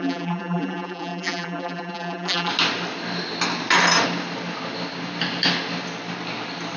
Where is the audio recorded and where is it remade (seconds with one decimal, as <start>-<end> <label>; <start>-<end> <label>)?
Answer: 0.0-2.5 remade; 2.5-6.8 recorded